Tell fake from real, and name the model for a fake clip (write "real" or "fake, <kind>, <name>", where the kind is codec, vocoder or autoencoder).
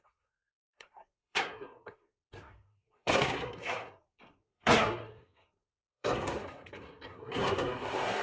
fake, codec, SNAC